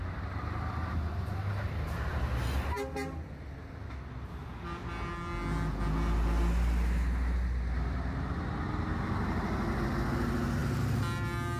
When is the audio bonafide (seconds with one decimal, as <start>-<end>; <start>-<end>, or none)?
0.0-11.6